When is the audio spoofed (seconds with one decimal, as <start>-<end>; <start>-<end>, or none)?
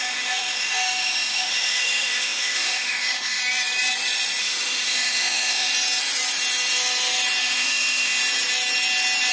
0.0-3.4; 4.4-5.7; 7.4-8.2